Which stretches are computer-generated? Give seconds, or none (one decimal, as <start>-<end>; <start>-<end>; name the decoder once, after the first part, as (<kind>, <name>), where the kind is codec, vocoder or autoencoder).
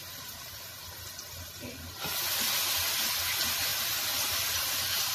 none